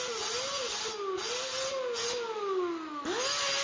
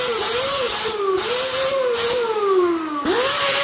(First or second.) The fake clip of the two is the second